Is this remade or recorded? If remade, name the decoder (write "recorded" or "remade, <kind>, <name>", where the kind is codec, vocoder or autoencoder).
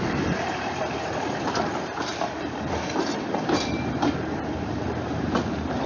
remade, vocoder, BigVGAN v2